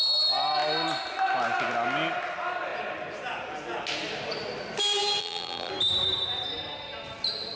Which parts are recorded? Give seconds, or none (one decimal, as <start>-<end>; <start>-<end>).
0.0-5.2; 5.7-7.6